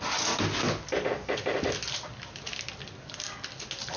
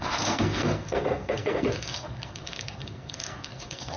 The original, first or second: first